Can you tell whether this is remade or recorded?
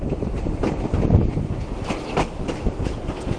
recorded